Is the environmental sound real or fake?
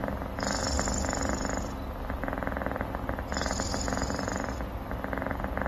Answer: real